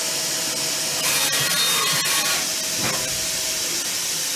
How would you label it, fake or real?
real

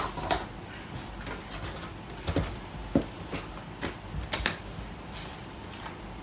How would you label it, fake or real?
real